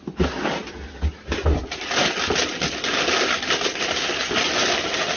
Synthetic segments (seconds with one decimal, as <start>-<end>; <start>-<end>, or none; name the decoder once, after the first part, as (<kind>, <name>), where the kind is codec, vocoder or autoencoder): none